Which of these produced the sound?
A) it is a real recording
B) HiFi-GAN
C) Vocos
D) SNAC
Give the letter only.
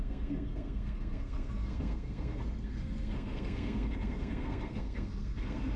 D